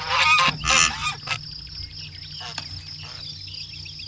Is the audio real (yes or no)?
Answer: yes